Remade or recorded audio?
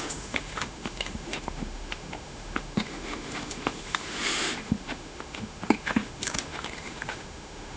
remade